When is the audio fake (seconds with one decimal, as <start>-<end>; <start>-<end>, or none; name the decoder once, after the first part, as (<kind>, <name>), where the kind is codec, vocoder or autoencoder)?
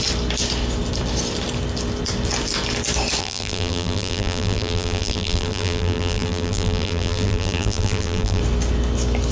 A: 3.2-8.4 (vocoder, BigVGAN v2)